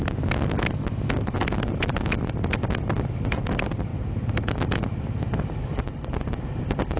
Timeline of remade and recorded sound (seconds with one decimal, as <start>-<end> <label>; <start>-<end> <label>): 0.0-7.0 recorded